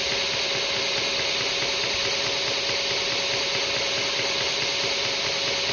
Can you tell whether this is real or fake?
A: real